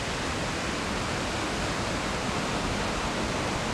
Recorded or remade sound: recorded